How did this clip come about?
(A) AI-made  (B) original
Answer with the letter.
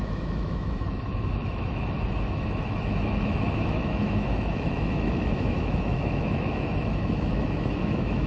A